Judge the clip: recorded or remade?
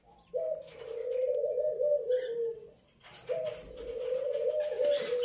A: recorded